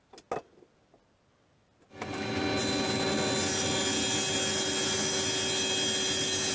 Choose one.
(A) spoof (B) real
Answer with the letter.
B